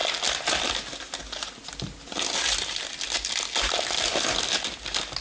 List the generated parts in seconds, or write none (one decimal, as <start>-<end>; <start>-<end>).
none